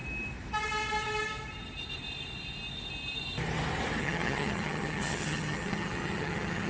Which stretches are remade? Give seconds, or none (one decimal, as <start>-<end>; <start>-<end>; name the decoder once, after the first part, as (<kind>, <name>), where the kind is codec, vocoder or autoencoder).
4.0-6.7 (vocoder, HiFi-GAN)